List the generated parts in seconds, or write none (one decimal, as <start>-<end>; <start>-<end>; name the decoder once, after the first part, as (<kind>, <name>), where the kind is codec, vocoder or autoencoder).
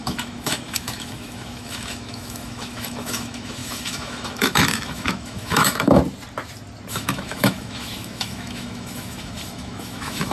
0.0-6.0 (autoencoder, DAC-VAE); 6.9-10.3